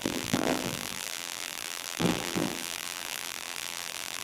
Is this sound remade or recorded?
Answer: remade